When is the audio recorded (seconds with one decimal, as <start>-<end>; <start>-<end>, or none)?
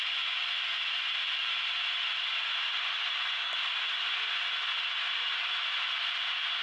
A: 0.0-6.6